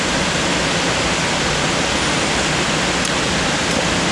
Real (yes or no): yes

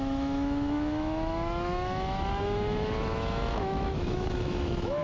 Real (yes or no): no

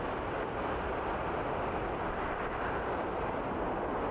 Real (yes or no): yes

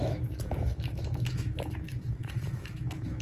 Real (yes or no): no